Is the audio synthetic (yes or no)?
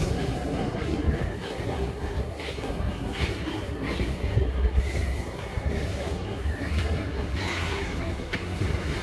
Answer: yes